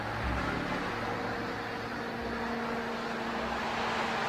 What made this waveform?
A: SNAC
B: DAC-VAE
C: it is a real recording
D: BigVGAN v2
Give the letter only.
C